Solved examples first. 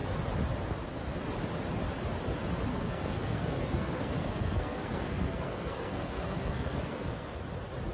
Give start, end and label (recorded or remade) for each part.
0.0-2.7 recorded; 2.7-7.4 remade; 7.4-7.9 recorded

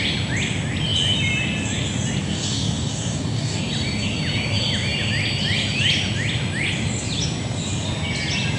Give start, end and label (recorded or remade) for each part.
0.0-2.2 recorded; 2.2-3.6 remade; 3.6-8.6 recorded

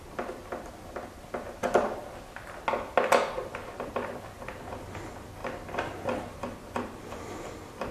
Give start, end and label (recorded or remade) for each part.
0.0-7.9 recorded

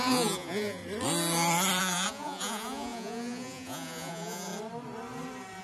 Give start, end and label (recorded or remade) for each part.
0.0-0.8 remade; 0.8-1.8 recorded; 1.8-4.5 remade; 4.5-5.6 recorded

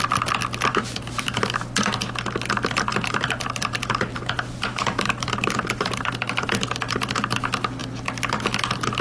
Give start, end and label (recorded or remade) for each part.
0.0-0.7 recorded; 0.7-1.4 remade; 1.4-2.9 recorded; 2.9-6.1 remade; 6.1-9.0 recorded

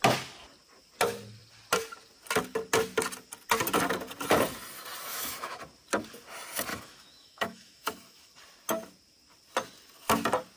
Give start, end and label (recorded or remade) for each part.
0.0-5.1 recorded; 5.1-5.6 remade; 5.6-6.7 recorded; 6.7-8.3 remade; 8.3-10.6 recorded

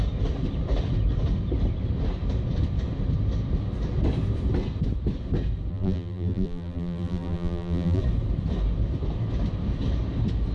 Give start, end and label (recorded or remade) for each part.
0.0-5.7 recorded; 5.7-8.0 remade; 8.0-10.5 recorded